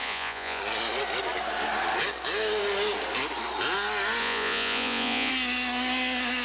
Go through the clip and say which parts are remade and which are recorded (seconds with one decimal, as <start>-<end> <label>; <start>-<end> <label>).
0.0-0.6 remade; 0.6-4.2 recorded; 4.2-5.3 remade; 5.3-6.4 recorded